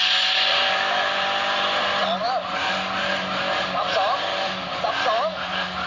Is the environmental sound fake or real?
real